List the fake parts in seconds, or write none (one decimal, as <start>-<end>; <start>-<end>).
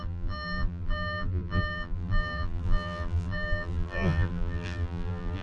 0.0-5.4